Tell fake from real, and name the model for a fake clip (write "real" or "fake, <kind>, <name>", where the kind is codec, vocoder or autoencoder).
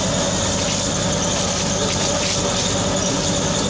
real